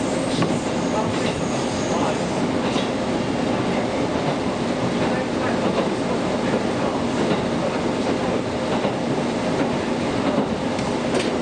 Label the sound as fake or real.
real